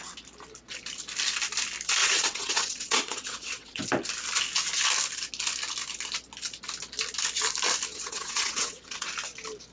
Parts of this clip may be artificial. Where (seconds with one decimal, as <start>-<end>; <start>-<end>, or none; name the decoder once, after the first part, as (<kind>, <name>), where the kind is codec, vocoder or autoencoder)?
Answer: 2.0-3.8 (vocoder, WaveNeXt); 7.9-9.1